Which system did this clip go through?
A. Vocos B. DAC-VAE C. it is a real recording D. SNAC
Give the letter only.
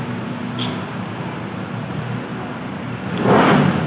C